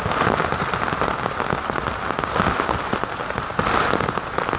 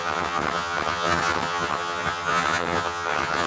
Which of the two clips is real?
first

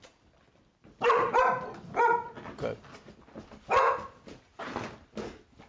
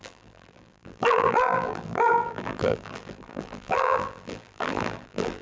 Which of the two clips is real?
first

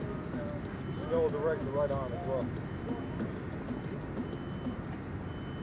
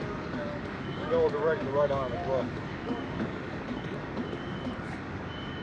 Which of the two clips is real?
first